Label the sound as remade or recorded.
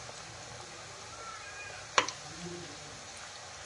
recorded